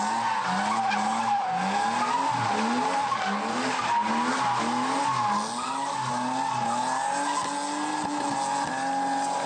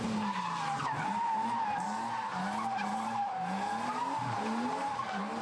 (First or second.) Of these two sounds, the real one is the first